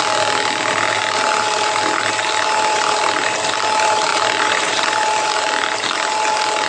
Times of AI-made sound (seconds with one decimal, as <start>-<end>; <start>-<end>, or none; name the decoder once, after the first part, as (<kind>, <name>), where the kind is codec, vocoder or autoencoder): 4.1-5.3 (vocoder, BigVGAN v2)

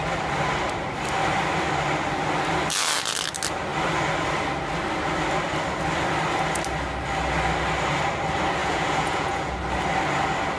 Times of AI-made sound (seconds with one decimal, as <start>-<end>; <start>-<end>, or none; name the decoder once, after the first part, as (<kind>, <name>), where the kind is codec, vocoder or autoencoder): 8.6-9.6 (vocoder, Vocos)

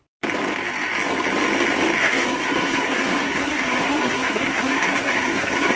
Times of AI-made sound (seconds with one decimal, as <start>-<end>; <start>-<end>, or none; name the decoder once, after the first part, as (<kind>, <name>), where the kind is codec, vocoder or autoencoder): 2.0-5.8 (codec, SNAC)

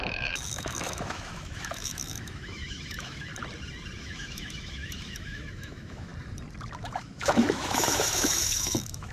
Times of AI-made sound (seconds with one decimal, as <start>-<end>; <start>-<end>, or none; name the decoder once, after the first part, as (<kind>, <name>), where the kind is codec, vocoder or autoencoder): 0.0-3.3 (autoencoder, DAC-VAE); 4.0-6.1; 6.8-9.1

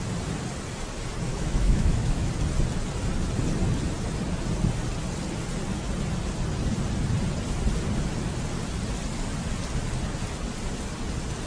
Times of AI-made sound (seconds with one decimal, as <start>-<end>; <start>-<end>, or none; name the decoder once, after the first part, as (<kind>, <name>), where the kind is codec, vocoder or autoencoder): 1.3-2.3 (autoencoder, DAC-VAE)